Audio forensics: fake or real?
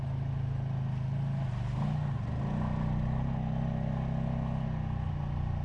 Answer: real